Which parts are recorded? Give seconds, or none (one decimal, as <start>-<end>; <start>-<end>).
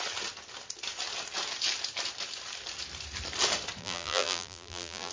0.0-3.8